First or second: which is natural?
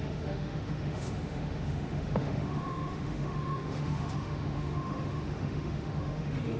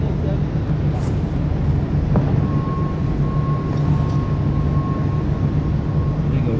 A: second